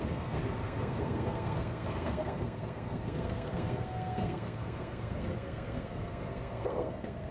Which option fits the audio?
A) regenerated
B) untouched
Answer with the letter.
A